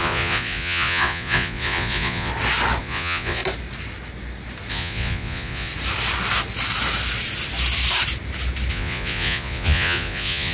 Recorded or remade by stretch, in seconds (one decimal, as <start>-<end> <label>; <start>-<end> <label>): 0.0-2.3 remade; 2.3-2.8 recorded; 2.8-3.4 remade; 3.4-4.7 recorded; 4.7-5.7 remade; 5.7-8.7 recorded; 8.7-10.5 remade